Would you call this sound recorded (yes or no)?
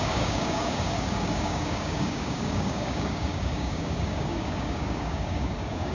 no